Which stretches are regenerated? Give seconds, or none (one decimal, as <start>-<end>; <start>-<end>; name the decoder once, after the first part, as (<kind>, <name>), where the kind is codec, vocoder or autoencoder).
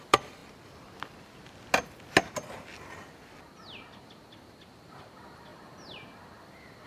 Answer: 0.0-0.4 (vocoder, BigVGAN v2); 4.0-5.5; 6.4-6.9